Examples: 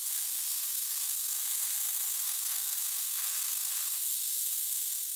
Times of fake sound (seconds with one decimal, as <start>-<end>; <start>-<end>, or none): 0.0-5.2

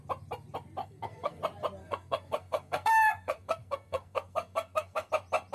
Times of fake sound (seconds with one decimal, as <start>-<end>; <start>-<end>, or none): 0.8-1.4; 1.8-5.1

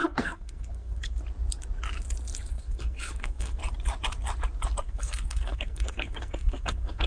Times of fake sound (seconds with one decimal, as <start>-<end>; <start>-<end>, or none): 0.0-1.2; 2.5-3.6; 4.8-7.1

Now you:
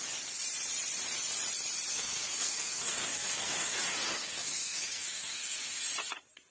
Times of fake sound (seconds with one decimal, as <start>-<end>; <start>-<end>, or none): 1.9-5.8